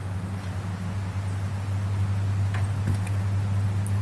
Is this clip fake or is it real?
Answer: real